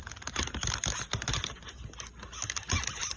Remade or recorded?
recorded